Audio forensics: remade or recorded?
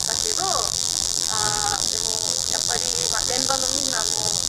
remade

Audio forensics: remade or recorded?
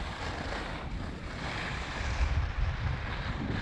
recorded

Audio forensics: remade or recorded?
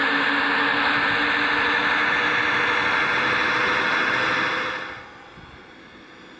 recorded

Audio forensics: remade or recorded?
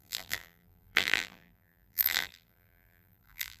remade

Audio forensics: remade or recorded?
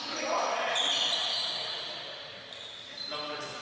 recorded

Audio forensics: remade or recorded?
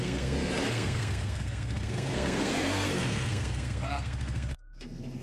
remade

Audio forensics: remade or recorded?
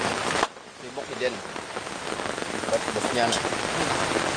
recorded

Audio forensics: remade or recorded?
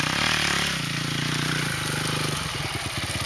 recorded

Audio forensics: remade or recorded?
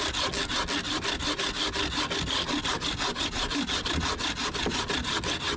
recorded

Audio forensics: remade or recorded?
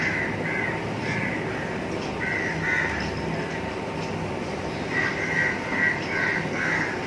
recorded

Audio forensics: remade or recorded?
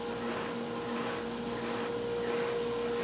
recorded